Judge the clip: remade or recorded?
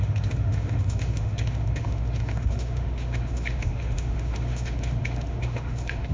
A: remade